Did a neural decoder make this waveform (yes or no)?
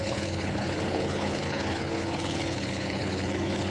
yes